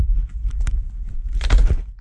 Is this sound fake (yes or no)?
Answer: no